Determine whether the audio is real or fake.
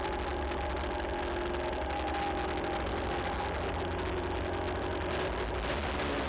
real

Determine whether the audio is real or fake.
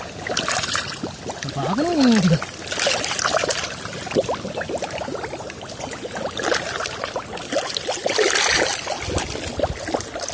real